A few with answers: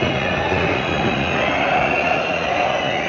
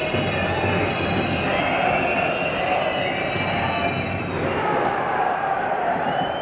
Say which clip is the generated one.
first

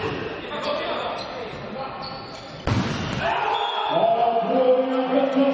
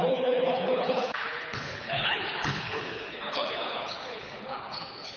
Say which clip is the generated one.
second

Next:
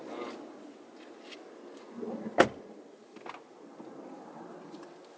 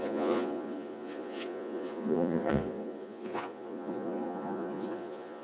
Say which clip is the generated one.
second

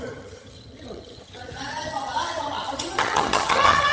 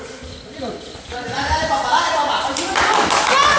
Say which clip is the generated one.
first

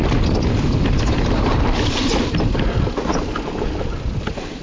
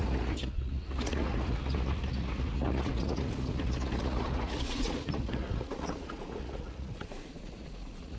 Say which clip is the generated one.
second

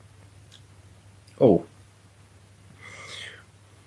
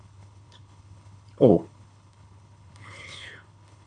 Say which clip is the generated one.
second